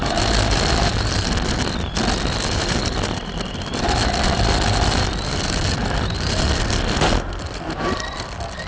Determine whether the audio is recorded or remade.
remade